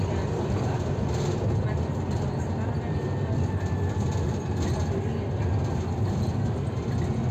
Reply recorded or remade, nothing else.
recorded